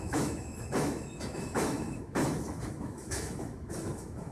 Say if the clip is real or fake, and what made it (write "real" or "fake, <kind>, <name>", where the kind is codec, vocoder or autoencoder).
fake, autoencoder, DAC-VAE